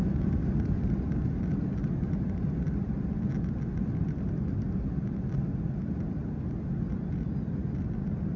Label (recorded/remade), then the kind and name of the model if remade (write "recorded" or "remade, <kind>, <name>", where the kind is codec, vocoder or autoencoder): recorded